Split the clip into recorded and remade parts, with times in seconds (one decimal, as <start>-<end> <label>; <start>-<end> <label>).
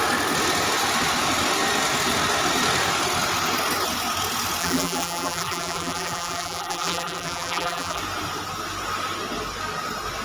0.0-4.6 recorded; 4.6-8.0 remade; 8.0-10.2 recorded